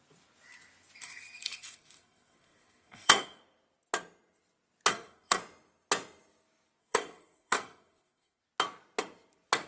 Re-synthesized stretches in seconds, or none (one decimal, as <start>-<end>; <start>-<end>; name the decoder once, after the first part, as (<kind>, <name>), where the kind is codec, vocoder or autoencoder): 1.0-3.4 (codec, SNAC); 4.9-5.4; 6.8-8.4